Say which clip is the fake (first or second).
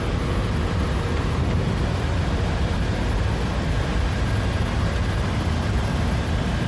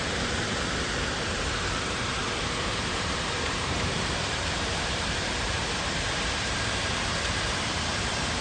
second